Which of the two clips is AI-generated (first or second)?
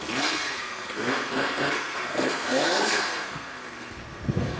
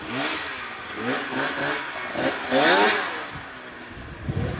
first